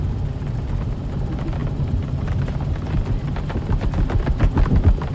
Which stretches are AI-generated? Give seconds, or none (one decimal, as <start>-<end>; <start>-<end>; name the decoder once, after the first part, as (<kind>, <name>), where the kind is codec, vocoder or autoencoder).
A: 1.6-2.6 (vocoder, BigVGAN v2)